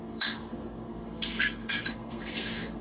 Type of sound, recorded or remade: remade